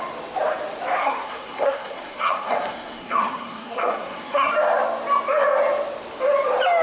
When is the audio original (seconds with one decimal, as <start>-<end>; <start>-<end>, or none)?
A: 0.0-1.0; 4.5-6.8